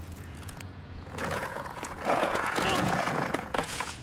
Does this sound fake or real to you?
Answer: fake